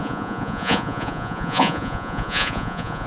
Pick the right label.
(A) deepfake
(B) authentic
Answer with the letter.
A